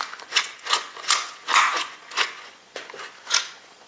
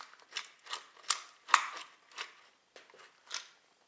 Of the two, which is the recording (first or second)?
second